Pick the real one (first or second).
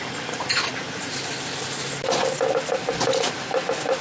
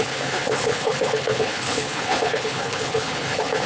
first